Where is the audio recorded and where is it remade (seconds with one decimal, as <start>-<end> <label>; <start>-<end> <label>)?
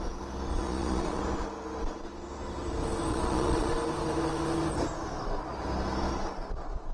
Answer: 0.0-0.5 recorded; 0.5-1.2 remade; 1.2-3.1 recorded; 3.1-3.7 remade; 3.7-6.9 recorded